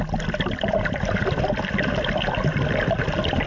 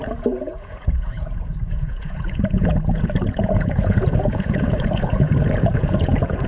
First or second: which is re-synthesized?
second